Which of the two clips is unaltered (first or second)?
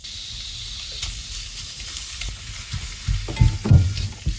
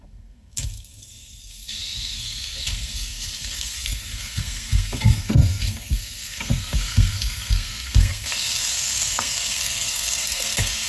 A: first